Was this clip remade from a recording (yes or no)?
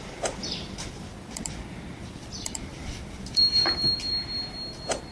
yes